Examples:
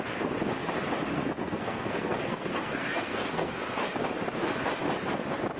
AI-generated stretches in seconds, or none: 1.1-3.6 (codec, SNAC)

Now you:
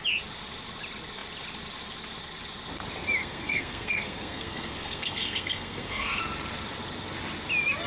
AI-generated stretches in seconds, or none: 3.2-6.2 (codec, SNAC)

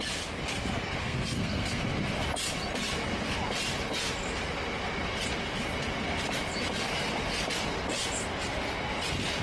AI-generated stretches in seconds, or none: 1.0-1.8 (codec, SNAC)